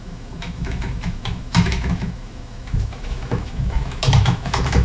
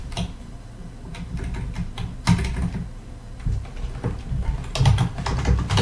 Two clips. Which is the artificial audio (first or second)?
first